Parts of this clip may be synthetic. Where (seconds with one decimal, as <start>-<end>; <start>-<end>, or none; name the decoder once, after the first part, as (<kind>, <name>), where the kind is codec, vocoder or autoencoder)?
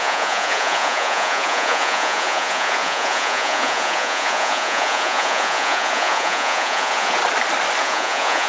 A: 0.0-7.2 (vocoder, Vocos); 7.8-8.5